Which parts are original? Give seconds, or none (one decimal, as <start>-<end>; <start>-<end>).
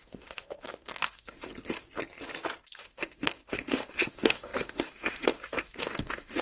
1.5-2.6